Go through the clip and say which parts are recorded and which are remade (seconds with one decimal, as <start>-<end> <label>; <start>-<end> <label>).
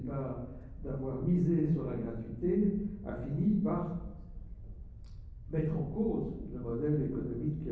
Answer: 0.0-7.7 recorded